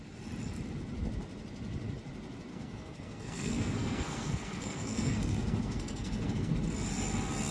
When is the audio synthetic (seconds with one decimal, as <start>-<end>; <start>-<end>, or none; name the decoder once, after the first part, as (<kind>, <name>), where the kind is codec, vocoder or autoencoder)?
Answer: 2.5-6.5 (codec, SNAC)